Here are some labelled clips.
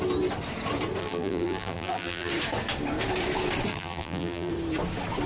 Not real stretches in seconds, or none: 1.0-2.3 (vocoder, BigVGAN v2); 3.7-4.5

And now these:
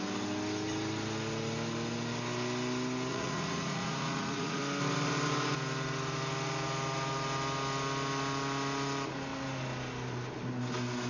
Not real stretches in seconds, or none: 3.1-4.6 (vocoder, Vocos)

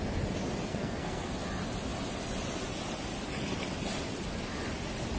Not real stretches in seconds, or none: 0.7-1.3 (codec, SNAC)

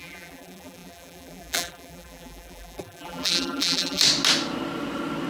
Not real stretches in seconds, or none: 0.0-4.0 (vocoder, BigVGAN v2)

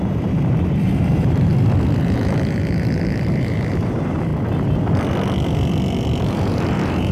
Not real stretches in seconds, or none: 0.0-1.5 (vocoder, BigVGAN v2); 2.0-4.3; 6.2-7.1

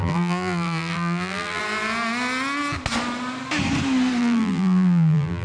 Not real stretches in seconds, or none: 0.0-1.6 (vocoder, BigVGAN v2); 4.2-5.4

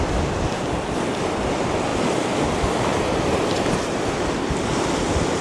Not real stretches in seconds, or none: none